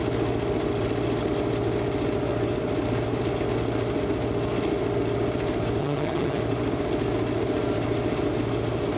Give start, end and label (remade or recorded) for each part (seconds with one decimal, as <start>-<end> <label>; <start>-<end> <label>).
0.0-5.8 recorded; 5.8-6.4 remade; 6.4-9.0 recorded